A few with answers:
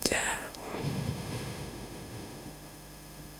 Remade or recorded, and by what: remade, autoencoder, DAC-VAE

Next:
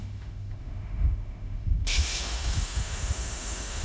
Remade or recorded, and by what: remade, autoencoder, DAC-VAE